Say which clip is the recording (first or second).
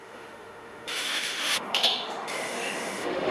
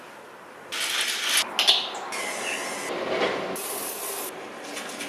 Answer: second